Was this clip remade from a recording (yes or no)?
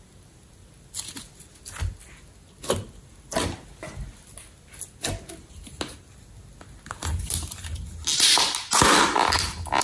no